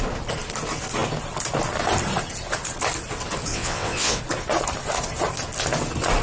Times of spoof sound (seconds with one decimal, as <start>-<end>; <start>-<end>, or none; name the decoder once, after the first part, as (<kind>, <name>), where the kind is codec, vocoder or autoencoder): 3.5-4.2 (vocoder, WaveNeXt)